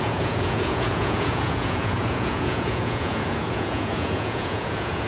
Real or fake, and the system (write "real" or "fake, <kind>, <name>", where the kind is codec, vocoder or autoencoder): fake, vocoder, Vocos